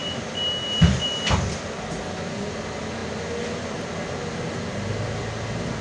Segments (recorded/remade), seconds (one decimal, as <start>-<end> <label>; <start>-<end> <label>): 0.0-5.8 recorded